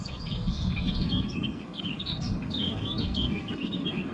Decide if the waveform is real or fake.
fake